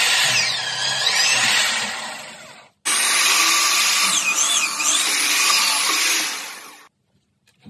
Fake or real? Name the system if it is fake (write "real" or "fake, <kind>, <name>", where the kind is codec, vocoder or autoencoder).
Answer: real